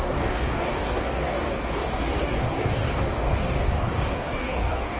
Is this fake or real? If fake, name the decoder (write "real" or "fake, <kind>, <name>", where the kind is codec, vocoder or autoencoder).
fake, codec, DAC